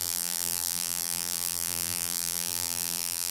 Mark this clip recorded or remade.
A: remade